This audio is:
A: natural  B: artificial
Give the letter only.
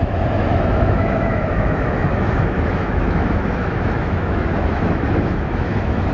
B